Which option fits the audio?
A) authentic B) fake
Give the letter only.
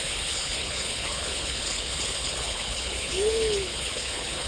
B